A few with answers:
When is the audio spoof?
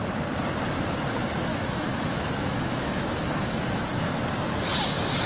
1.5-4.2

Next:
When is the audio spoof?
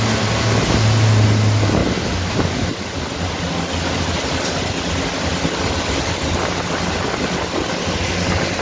none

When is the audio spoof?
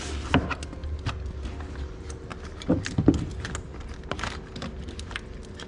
none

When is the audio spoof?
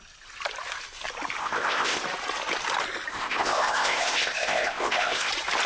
1.4-2.0; 3.1-5.3